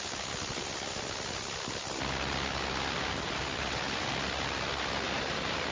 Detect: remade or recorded recorded